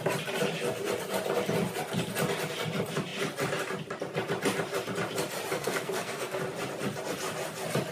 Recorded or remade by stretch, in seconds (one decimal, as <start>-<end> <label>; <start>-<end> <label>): 0.0-5.5 recorded; 5.5-6.4 remade; 6.4-7.9 recorded